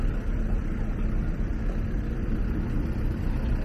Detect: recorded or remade remade